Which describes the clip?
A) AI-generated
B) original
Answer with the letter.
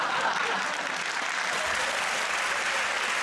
B